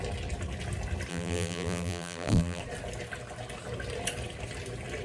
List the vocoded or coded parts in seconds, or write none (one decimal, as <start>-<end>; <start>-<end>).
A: 1.1-2.6